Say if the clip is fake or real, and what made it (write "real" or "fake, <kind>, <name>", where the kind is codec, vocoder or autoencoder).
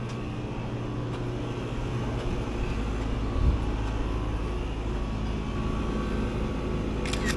real